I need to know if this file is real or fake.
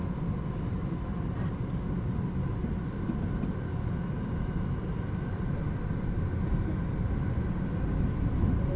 real